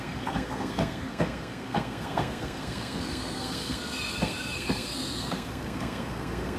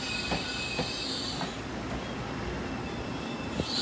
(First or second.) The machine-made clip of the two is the first